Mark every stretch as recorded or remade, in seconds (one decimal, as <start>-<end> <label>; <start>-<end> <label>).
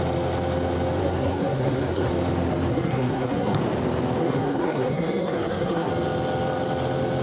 0.0-1.0 recorded; 1.0-2.1 remade; 2.1-2.7 recorded; 2.7-3.6 remade; 3.6-4.2 recorded; 4.2-5.9 remade; 5.9-7.2 recorded